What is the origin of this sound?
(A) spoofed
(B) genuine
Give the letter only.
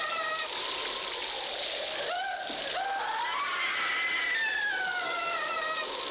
B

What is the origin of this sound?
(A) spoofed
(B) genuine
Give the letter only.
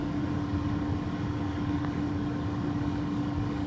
A